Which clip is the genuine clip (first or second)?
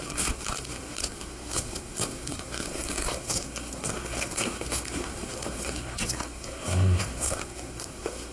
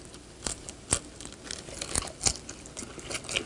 second